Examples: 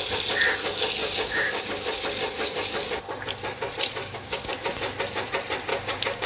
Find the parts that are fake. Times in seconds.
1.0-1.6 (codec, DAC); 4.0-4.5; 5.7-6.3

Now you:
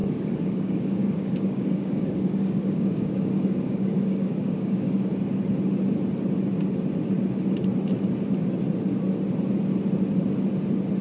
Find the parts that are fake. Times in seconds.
0.0-5.1 (codec, DAC)

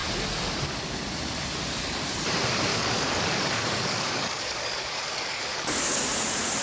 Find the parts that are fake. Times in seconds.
2.7-6.0 (codec, DAC)

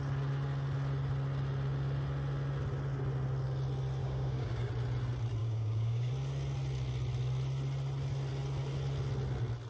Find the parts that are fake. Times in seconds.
4.0-4.7 (codec, DAC); 5.4-6.1

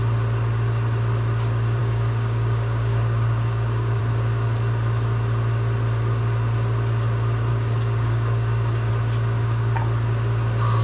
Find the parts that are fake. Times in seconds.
1.8-4.0 (codec, DAC); 7.5-8.9

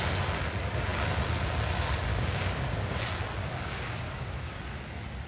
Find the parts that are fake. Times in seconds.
2.1-3.0 (codec, DAC); 3.4-4.6

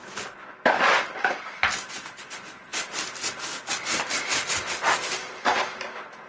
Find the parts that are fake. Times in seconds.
0.0-0.8 (codec, DAC)

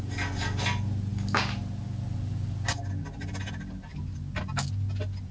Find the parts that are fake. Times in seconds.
none